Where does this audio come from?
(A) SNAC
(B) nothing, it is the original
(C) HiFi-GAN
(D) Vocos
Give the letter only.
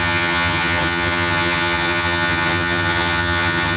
C